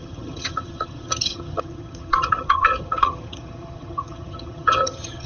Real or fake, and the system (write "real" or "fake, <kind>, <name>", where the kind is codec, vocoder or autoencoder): fake, vocoder, HiFi-GAN